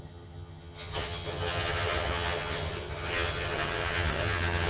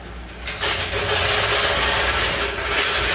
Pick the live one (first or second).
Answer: second